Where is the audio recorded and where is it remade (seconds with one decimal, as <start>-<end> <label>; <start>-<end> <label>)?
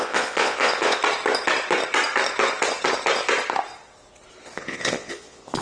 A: 0.0-1.0 remade; 1.0-4.4 recorded; 4.4-5.6 remade